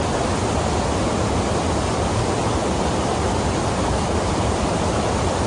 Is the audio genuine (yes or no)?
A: yes